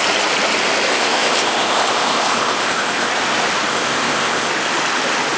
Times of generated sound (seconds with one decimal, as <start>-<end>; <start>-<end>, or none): 0.9-3.1; 3.7-4.5